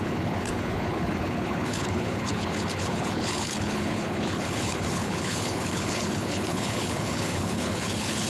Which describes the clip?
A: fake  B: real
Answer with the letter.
A